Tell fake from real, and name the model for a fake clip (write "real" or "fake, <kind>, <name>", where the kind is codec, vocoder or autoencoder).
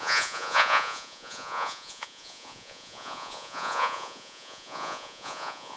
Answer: fake, vocoder, Vocos